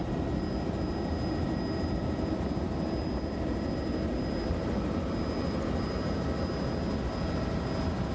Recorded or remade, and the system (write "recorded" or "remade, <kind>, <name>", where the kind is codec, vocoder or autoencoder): recorded